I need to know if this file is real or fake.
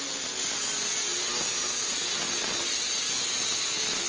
real